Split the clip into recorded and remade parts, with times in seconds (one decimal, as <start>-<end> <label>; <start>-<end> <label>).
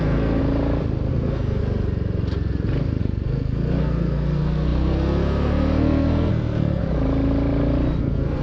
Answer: 0.0-0.4 remade; 0.4-1.1 recorded; 1.1-1.6 remade; 1.6-3.0 recorded; 3.0-6.8 remade; 6.8-8.0 recorded; 8.0-8.4 remade